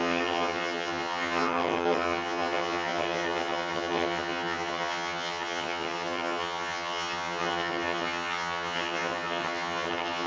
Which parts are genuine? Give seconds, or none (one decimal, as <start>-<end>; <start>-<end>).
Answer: none